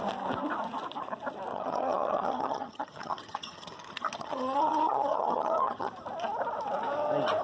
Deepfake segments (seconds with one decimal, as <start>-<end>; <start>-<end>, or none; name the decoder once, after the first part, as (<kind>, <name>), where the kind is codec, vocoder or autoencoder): 1.5-5.9 (vocoder, HiFi-GAN)